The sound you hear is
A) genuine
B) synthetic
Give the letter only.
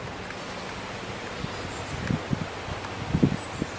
A